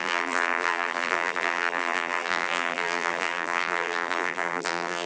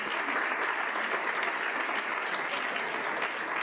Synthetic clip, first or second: first